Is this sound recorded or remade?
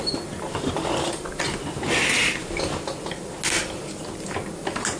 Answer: recorded